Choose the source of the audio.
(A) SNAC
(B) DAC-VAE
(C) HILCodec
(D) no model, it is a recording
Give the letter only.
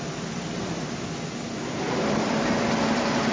D